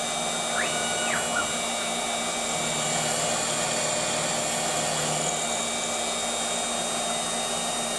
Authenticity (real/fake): real